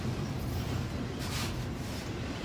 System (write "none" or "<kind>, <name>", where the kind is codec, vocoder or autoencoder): vocoder, BigVGAN v2